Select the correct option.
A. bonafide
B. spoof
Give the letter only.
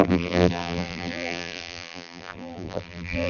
B